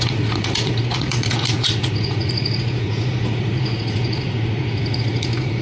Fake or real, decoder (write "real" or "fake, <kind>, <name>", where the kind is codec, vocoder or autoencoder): fake, vocoder, Vocos